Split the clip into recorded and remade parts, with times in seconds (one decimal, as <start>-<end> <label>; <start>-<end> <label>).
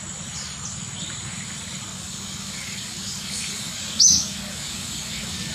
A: 0.0-1.9 recorded; 1.9-5.5 remade